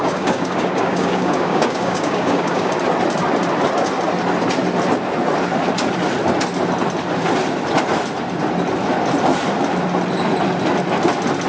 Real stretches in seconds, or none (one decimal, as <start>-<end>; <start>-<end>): 2.7-11.5

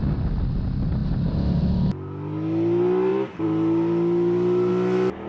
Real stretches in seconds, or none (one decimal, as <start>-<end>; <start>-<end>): 0.0-1.0; 1.6-3.1; 4.7-5.3

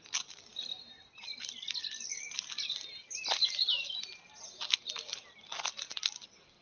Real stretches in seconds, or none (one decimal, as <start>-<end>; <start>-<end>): 0.0-6.6